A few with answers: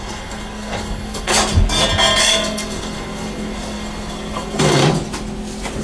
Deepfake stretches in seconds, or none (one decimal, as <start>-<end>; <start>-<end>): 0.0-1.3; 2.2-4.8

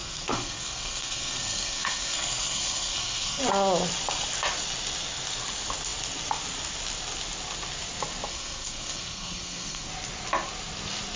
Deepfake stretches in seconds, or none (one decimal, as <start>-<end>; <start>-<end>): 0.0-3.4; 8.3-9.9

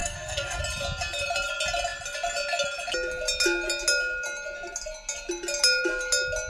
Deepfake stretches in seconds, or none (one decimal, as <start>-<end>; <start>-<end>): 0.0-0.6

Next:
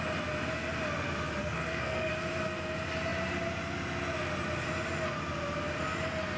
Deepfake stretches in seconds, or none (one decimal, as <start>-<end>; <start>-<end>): 1.4-2.1